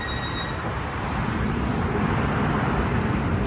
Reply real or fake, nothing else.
fake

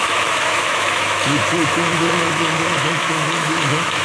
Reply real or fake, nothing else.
fake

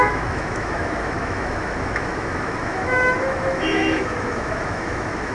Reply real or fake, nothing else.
fake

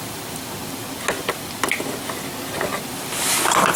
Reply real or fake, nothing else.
real